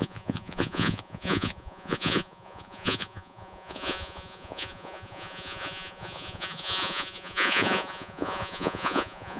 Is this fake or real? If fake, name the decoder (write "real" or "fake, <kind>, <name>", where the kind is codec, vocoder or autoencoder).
fake, vocoder, Vocos